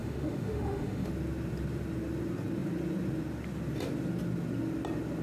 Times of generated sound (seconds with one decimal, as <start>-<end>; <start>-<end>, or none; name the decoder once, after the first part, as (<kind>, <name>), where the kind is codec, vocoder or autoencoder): 0.0-1.1 (autoencoder, DAC-VAE)